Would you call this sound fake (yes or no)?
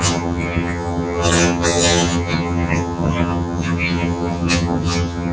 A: yes